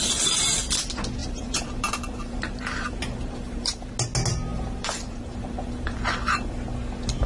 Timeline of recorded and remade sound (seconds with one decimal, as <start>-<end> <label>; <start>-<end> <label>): 0.0-1.2 recorded; 1.2-3.9 remade; 3.9-4.5 recorded; 4.5-6.5 remade; 6.5-7.3 recorded